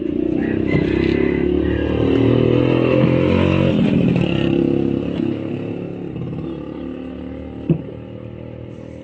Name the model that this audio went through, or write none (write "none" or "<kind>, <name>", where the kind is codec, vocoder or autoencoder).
none